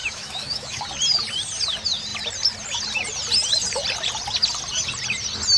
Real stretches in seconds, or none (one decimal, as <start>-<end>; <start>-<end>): 0.8-5.6